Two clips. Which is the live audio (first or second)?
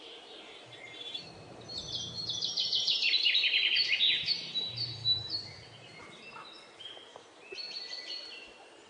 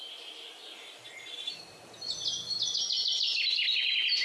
second